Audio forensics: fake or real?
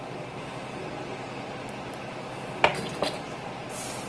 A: real